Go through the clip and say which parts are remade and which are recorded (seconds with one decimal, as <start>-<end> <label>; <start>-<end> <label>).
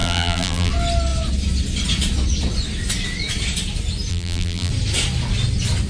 0.0-0.7 remade; 0.7-4.1 recorded; 4.1-4.7 remade; 4.7-5.9 recorded